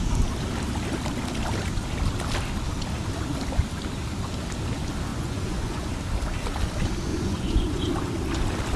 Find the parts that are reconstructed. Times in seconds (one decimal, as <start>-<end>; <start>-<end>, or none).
5.1-5.9; 7.1-7.9

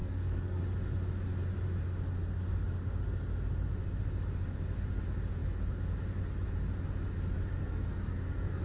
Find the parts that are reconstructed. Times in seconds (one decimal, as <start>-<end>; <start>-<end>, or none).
0.0-0.6; 7.6-8.6

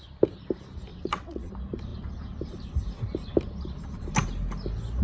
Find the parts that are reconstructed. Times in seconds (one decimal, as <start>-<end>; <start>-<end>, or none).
0.9-1.5